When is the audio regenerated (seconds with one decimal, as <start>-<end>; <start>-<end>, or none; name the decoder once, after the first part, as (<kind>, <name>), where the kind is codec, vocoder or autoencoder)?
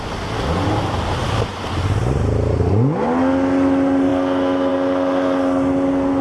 none